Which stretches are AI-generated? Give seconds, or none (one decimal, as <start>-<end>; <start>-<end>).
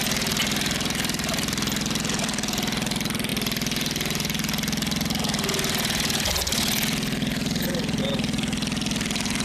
none